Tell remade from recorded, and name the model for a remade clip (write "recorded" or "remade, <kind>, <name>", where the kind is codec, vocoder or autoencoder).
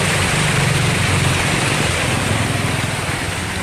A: recorded